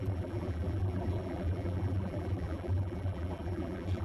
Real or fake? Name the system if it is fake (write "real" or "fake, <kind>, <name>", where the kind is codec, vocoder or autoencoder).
fake, vocoder, BigVGAN v2